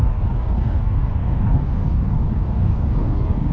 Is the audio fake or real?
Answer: fake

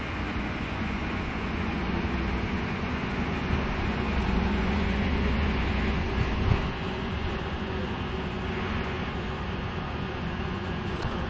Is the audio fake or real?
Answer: fake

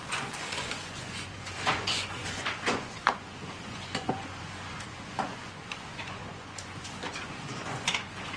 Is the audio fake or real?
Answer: fake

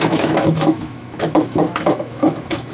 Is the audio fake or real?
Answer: fake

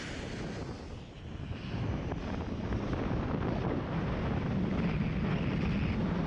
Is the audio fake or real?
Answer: real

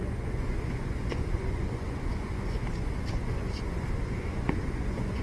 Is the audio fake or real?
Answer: fake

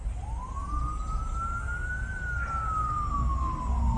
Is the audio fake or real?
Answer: real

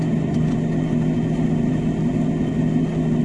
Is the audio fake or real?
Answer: real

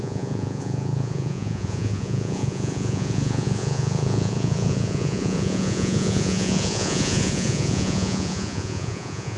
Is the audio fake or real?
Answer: fake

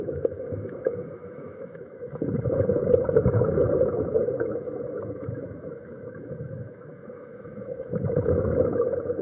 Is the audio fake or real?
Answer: fake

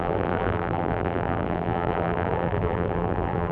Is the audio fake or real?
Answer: fake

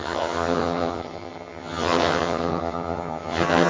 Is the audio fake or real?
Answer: fake